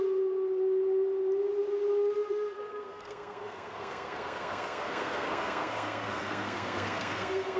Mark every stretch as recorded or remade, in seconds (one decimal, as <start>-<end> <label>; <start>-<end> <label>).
0.0-2.7 recorded; 2.7-7.6 remade